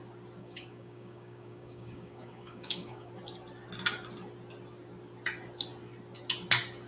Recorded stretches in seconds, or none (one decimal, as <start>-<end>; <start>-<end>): 0.0-0.4; 3.1-6.9